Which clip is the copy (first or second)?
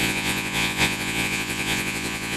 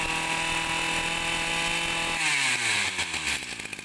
first